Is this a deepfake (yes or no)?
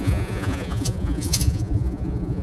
yes